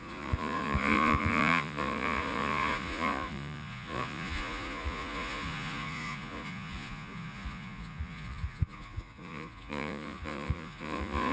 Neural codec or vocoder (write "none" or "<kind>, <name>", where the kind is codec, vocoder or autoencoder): vocoder, Vocos